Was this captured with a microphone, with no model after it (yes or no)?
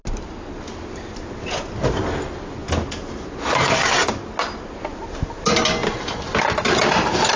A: yes